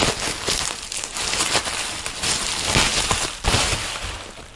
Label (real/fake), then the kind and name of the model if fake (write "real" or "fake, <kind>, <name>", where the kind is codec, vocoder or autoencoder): real